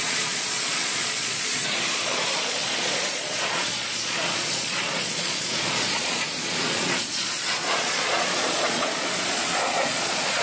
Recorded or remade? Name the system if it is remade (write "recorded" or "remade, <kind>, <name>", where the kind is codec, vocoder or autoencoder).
remade, vocoder, Vocos